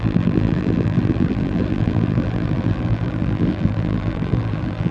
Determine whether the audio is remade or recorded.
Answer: remade